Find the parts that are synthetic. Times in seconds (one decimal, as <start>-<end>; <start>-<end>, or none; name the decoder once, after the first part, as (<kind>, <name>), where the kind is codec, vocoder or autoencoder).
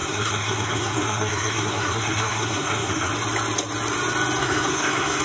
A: 0.0-3.1 (codec, SNAC); 4.4-5.2